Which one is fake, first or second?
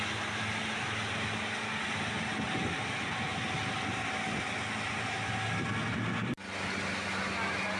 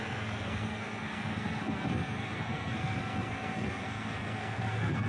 second